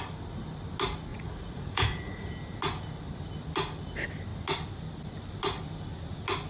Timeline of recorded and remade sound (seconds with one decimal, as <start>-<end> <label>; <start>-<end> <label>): 0.0-1.1 recorded; 1.1-2.3 remade; 2.3-6.5 recorded